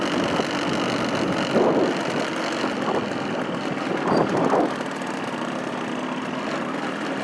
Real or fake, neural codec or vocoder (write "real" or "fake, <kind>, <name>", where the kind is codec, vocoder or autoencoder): real